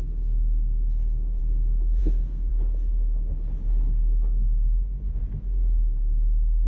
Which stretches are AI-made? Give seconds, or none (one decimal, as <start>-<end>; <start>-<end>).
0.0-2.5